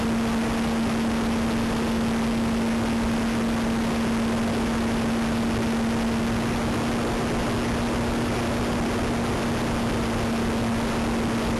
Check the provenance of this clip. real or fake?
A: real